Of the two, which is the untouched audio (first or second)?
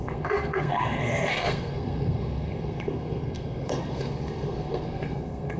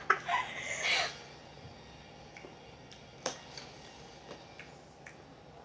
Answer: second